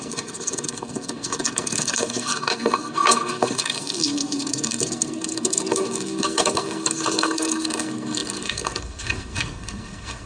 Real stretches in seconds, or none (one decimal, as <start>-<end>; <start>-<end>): none